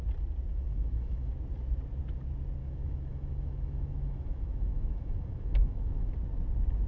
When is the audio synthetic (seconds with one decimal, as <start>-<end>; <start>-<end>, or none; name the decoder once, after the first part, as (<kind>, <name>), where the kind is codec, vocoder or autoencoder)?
0.5-1.3 (autoencoder, DAC-VAE); 2.6-6.1